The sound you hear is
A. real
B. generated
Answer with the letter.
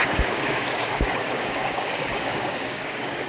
B